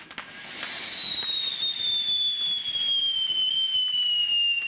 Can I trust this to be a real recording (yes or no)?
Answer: yes